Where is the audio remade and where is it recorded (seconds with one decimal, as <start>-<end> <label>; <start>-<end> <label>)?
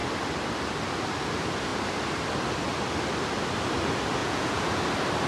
0.0-4.2 recorded; 4.2-4.8 remade; 4.8-5.3 recorded